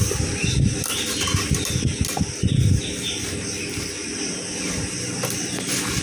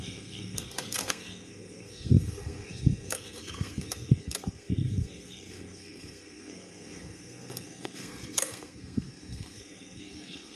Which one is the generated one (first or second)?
second